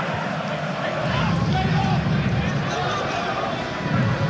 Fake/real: real